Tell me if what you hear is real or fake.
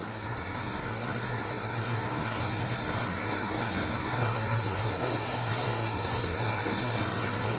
fake